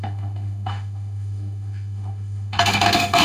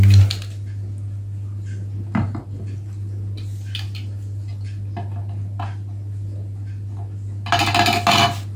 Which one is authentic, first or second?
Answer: second